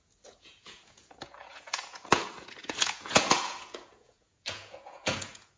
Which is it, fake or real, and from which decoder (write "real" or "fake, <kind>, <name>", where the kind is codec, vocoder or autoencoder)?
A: fake, vocoder, Vocos